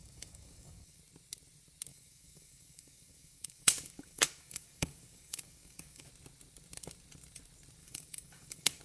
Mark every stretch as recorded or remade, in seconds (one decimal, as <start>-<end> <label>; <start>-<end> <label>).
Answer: 0.0-1.0 remade; 1.0-1.9 recorded; 1.9-6.1 remade; 6.1-7.8 recorded; 7.8-8.8 remade

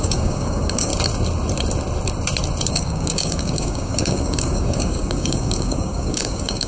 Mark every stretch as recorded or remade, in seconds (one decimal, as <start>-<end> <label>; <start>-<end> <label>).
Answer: 0.0-0.9 remade; 0.9-2.7 recorded; 2.7-6.7 remade

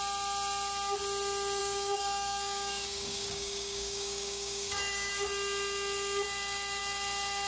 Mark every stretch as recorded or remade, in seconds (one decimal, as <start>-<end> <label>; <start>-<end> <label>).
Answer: 0.0-1.6 recorded; 1.6-5.1 remade; 5.1-7.5 recorded

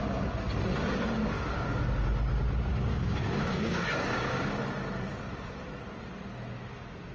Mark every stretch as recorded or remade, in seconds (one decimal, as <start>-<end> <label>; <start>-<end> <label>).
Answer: 0.0-1.3 recorded; 1.3-1.8 remade; 1.8-2.7 recorded; 2.7-4.6 remade; 4.6-7.1 recorded

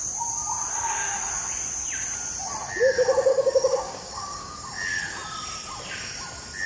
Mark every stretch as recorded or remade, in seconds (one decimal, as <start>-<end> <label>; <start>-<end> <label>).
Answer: 0.0-3.3 recorded; 3.3-4.6 remade; 4.6-6.7 recorded

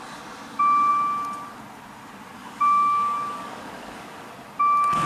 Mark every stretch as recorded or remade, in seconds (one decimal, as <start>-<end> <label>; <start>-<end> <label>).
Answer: 0.0-2.4 recorded; 2.4-4.3 remade; 4.3-5.1 recorded

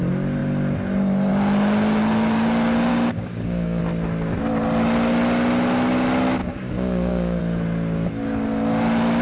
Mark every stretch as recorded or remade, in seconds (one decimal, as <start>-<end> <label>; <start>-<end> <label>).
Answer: 0.0-2.9 recorded; 2.9-3.8 remade; 3.8-6.4 recorded; 6.4-7.4 remade; 7.4-9.2 recorded

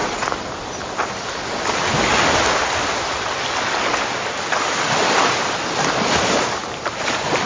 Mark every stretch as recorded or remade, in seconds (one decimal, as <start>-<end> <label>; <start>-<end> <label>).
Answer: 0.0-7.5 recorded